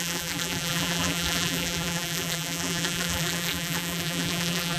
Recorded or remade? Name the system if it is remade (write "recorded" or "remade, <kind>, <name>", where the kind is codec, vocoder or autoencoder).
remade, vocoder, BigVGAN v2